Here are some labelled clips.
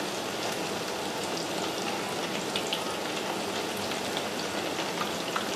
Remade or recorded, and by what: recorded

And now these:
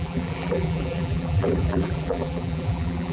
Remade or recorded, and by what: remade, vocoder, BigVGAN v2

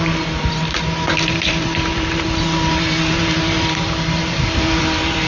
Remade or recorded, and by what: remade, vocoder, BigVGAN v2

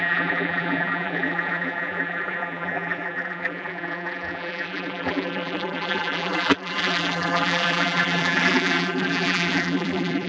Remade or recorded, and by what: remade, vocoder, BigVGAN v2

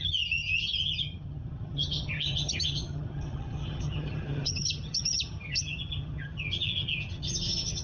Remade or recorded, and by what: remade, vocoder, HiFi-GAN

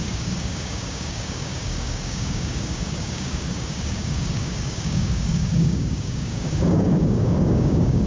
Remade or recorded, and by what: remade, codec, DAC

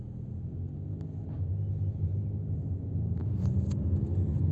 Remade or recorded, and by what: recorded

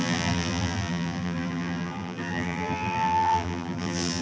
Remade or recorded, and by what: remade, vocoder, BigVGAN v2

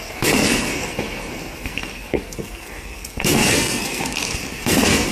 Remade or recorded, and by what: remade, codec, SNAC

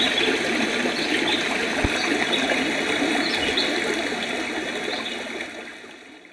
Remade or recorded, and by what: recorded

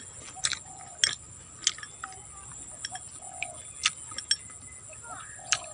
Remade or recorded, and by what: recorded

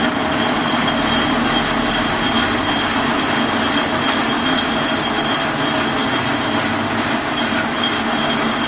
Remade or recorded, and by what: recorded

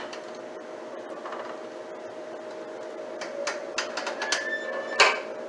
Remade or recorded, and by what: recorded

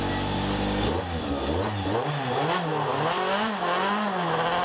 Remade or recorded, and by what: recorded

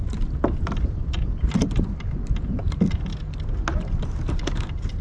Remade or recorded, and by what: recorded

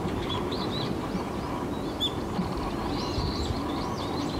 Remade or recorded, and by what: recorded